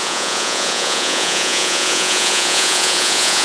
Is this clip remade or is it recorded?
remade